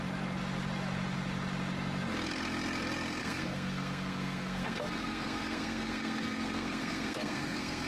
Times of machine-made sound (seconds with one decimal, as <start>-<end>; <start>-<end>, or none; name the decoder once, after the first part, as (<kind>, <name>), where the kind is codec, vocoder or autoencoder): 3.2-7.9 (codec, SNAC)